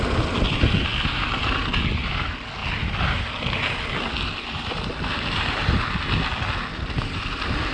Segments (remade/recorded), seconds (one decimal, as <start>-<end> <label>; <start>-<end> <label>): 0.0-7.7 recorded